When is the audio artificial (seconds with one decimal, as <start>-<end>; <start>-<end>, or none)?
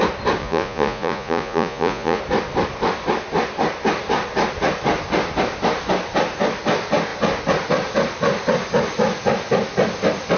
0.4-2.2